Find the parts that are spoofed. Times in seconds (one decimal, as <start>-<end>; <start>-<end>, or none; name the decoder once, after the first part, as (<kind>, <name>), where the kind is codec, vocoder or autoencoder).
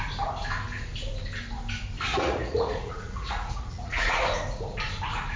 2.1-4.2 (vocoder, Vocos)